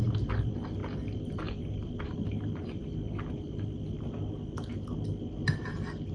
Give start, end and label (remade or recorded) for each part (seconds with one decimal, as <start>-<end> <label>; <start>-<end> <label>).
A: 0.0-6.1 recorded